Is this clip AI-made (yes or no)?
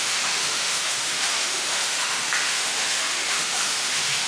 yes